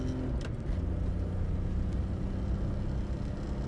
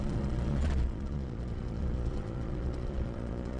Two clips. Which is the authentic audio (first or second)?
first